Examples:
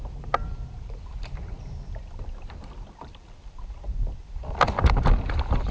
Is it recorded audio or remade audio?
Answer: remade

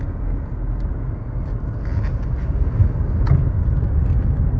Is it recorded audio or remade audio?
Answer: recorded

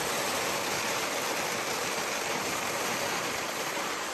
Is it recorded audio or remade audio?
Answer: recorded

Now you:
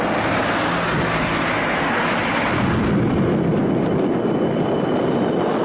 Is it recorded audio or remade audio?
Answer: recorded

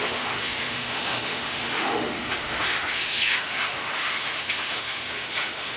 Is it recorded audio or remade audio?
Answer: remade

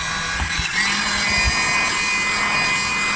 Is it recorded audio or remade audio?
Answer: recorded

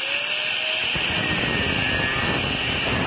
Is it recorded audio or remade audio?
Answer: recorded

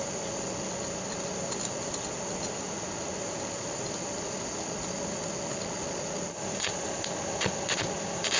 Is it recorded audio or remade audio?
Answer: recorded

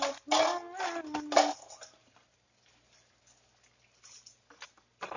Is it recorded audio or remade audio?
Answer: recorded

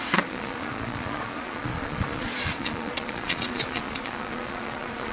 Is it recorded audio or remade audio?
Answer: remade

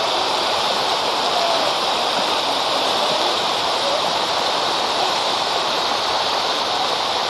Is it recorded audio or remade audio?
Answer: remade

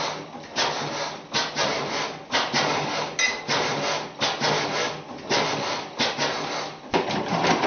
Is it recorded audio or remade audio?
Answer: recorded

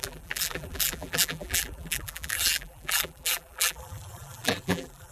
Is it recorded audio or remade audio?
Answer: remade